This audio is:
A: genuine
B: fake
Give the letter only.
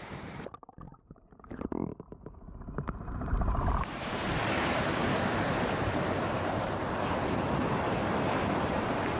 B